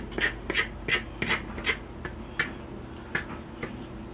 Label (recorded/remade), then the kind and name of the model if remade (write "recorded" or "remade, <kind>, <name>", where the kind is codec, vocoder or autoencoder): recorded